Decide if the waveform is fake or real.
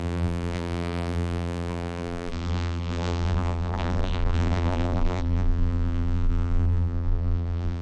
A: fake